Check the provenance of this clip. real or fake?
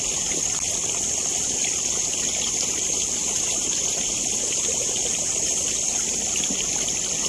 real